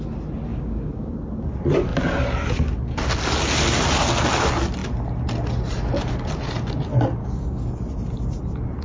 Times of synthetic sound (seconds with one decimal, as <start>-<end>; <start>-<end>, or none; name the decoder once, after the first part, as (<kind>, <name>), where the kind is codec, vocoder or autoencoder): 0.5-1.1 (codec, DAC); 7.2-7.7